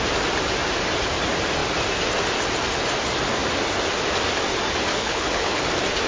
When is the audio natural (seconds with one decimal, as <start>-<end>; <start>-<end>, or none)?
0.0-4.9; 5.6-6.1